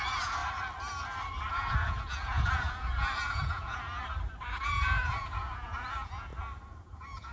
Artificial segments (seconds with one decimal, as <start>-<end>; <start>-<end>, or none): 0.0-0.4; 1.5-4.0; 4.5-6.3; 6.8-7.3